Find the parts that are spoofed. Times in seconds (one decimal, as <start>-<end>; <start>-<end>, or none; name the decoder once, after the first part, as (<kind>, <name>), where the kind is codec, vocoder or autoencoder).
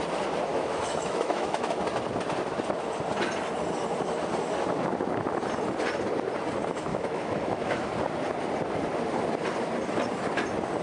0.5-1.8 (autoencoder, DAC-VAE); 6.9-7.9